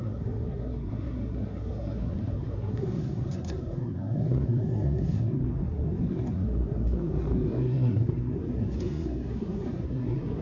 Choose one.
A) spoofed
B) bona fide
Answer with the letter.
A